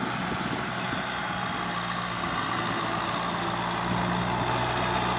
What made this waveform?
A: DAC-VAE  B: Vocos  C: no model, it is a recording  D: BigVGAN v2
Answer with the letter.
C